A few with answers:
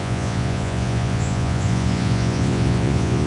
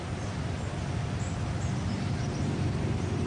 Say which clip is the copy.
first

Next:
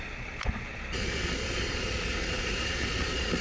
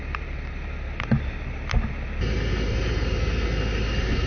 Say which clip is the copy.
first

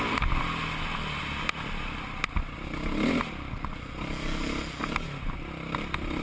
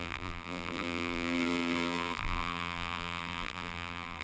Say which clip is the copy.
second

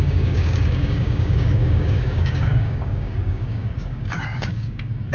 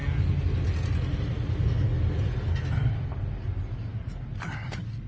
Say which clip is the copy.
first